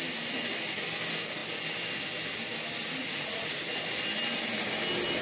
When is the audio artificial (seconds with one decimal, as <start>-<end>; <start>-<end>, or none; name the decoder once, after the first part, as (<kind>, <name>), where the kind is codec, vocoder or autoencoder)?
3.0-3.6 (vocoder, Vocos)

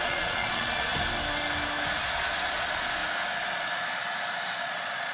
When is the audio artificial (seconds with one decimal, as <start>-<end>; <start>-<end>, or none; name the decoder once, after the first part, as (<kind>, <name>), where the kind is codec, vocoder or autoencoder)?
0.0-0.9 (vocoder, Vocos); 2.0-3.0; 4.6-5.1

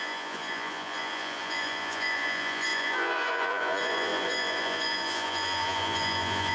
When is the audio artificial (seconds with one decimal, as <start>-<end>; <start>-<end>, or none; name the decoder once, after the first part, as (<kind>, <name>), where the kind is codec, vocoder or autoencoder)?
0.0-6.5 (vocoder, Vocos)

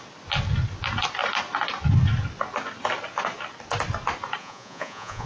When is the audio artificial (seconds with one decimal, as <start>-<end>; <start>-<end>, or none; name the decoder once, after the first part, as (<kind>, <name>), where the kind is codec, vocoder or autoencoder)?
4.4-5.3 (vocoder, Vocos)

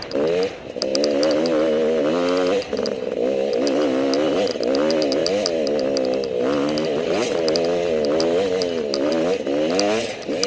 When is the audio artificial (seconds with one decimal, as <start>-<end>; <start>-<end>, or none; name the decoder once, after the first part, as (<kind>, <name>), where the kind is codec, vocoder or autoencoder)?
none

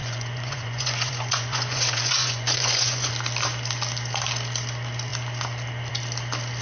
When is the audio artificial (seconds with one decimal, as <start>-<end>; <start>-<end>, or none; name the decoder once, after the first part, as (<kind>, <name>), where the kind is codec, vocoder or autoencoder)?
0.0-3.1 (vocoder, Vocos)